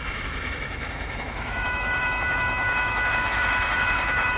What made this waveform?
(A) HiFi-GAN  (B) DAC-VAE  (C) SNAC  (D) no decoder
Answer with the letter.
B